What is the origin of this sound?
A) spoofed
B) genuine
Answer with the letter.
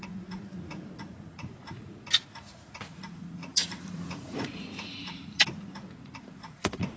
A